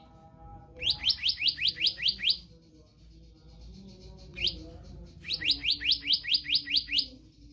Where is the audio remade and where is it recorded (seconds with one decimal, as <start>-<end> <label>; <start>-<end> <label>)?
0.0-7.5 recorded